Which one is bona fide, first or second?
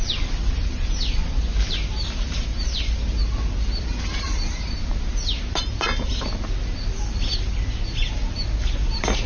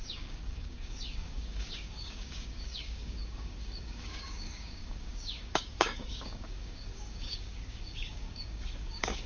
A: first